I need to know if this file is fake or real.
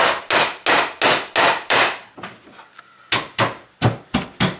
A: real